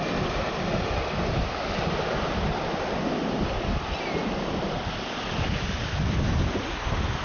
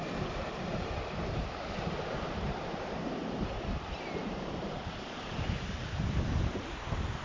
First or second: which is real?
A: first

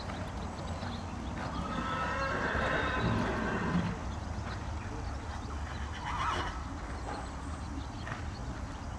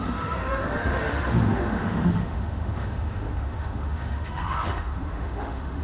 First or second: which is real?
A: first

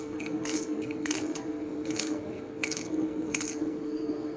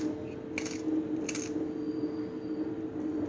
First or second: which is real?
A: second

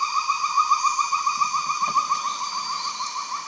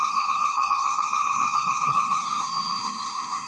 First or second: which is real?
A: first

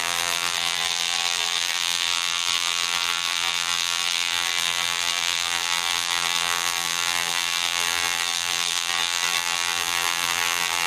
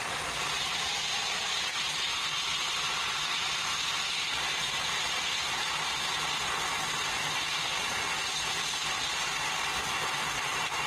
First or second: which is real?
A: second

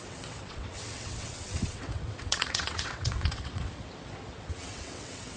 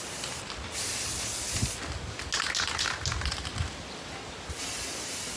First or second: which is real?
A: second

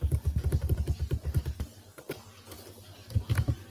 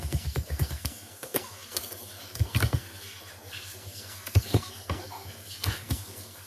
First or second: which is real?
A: first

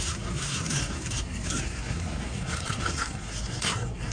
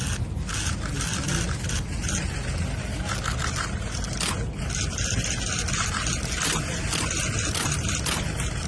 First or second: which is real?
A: second